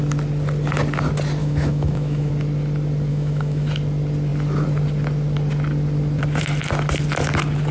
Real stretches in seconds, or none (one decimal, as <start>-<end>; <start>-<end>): 0.0-1.4; 2.3-3.1; 3.7-7.7